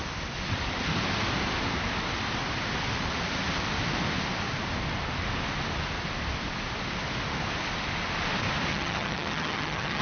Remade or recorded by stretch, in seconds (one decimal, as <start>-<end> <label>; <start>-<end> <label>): 0.0-8.7 recorded; 8.7-10.0 remade